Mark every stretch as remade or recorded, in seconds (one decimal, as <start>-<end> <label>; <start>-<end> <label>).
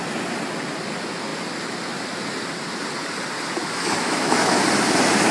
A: 0.0-3.6 recorded; 3.6-4.6 remade; 4.6-5.3 recorded